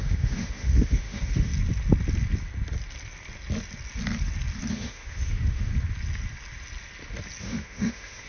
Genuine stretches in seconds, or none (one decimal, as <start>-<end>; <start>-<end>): 1.5-4.7; 5.7-7.4